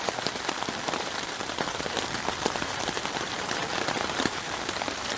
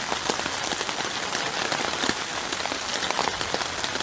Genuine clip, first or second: second